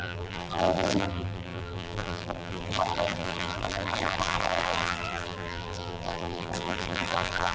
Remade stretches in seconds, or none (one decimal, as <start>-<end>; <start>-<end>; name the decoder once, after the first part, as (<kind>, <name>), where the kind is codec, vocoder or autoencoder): 0.0-7.5 (vocoder, BigVGAN v2)